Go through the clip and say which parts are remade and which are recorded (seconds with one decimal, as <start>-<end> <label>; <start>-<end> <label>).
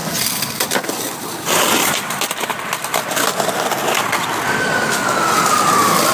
0.0-3.7 remade; 3.7-6.1 recorded